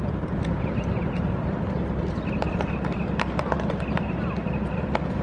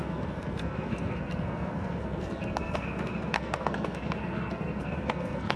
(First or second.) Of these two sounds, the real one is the first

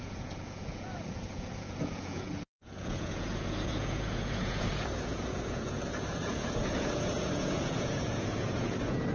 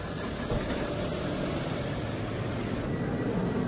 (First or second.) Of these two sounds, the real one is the second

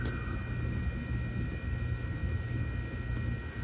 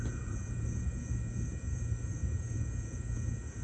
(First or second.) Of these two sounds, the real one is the first